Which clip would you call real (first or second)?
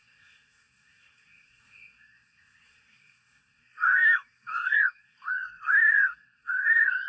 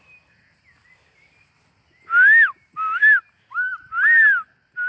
second